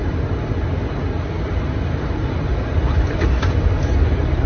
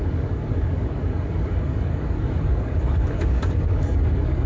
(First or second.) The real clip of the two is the first